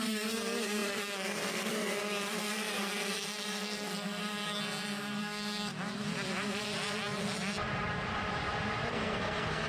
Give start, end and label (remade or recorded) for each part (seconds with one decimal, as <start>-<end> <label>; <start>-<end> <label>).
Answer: 0.0-4.6 remade; 4.6-5.2 recorded; 5.2-5.7 remade; 5.7-8.9 recorded; 8.9-9.7 remade